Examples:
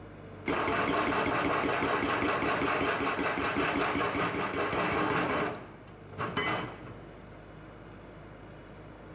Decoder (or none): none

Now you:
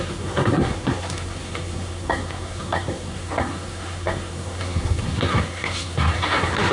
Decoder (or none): codec, SNAC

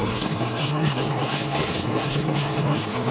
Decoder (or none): codec, SNAC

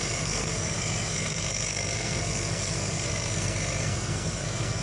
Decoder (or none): codec, SNAC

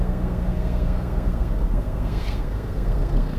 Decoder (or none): codec, SNAC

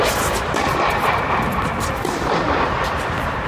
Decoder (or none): none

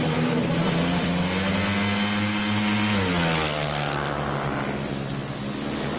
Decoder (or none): none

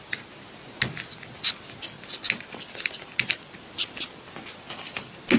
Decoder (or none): none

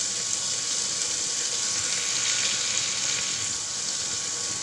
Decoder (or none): none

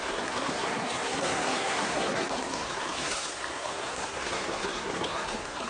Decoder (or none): codec, SNAC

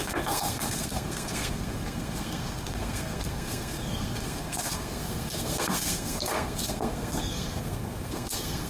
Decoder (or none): codec, SNAC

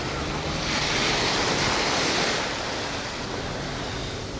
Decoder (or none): none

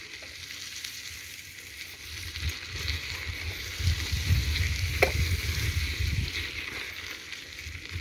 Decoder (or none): none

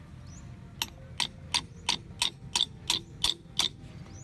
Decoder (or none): none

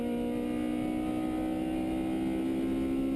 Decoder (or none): none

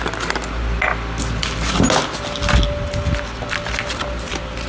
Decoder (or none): none